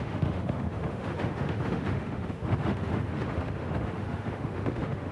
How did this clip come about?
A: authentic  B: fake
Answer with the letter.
B